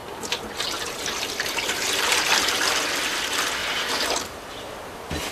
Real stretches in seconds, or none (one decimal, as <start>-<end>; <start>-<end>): 3.2-3.6; 4.7-5.3